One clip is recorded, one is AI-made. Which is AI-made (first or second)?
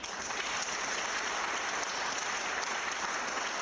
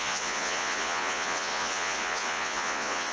second